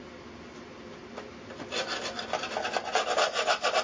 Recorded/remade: recorded